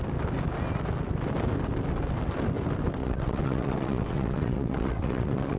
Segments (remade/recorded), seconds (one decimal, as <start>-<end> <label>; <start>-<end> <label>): 0.0-3.0 recorded; 3.0-5.6 remade